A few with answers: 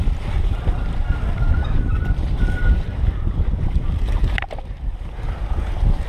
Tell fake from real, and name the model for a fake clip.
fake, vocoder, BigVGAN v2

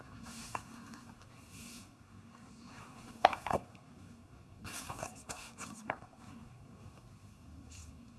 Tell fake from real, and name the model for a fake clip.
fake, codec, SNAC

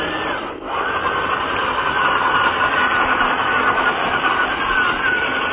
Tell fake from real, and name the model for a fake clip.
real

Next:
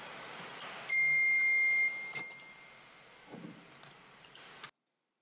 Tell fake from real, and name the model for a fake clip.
real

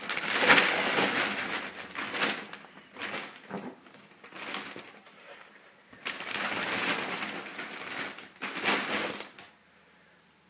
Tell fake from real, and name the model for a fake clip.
real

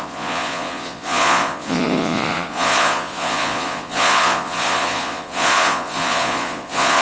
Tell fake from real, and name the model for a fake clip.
fake, vocoder, Vocos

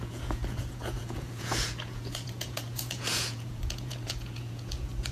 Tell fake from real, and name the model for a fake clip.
fake, vocoder, Vocos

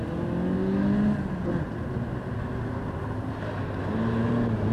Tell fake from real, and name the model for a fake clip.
real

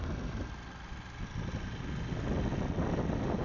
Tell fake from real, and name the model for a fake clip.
real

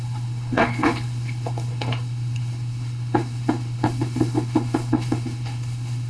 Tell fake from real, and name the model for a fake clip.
fake, codec, HILCodec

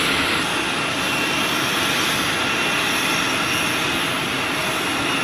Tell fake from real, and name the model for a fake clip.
real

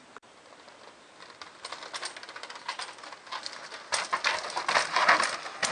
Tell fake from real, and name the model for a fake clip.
real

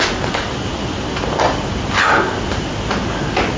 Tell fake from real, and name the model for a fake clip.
real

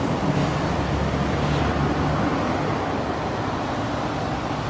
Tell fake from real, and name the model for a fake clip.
real